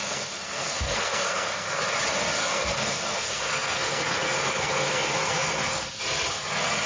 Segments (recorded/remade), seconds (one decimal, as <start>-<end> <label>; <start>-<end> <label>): 0.0-1.8 remade; 1.8-2.4 recorded; 2.4-6.0 remade; 6.0-6.9 recorded